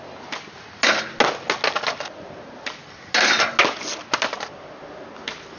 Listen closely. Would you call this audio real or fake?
real